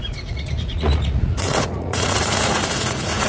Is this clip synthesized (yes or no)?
yes